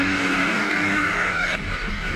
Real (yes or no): no